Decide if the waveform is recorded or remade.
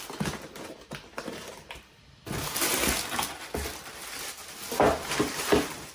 recorded